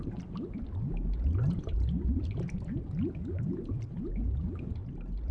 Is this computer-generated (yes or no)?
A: no